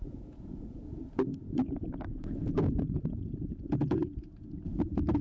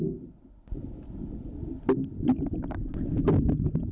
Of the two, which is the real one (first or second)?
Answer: second